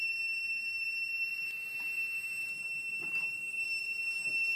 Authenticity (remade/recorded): remade